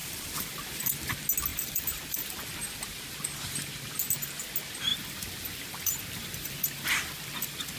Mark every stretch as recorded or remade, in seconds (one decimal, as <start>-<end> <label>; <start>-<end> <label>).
0.0-1.1 remade; 1.1-1.5 recorded; 1.5-2.4 remade; 2.4-4.9 recorded; 4.9-7.8 remade